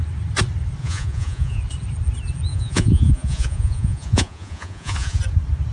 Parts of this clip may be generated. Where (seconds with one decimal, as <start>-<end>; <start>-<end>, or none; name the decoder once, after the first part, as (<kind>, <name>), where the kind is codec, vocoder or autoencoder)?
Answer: 0.8-1.6 (vocoder, Vocos); 2.5-5.2